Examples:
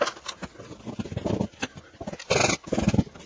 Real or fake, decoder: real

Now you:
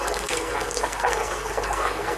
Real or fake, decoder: fake, codec, SNAC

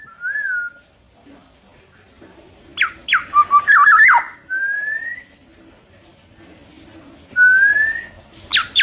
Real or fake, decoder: real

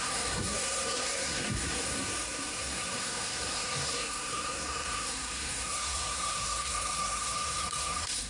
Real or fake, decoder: fake, codec, SNAC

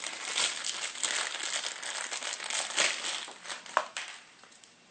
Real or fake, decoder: real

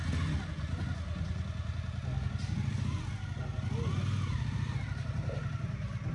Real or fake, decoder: real